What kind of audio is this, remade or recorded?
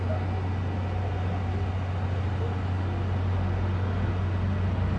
recorded